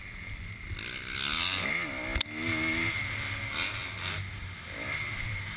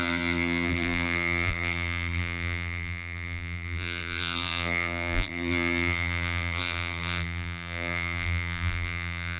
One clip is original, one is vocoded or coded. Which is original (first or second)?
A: first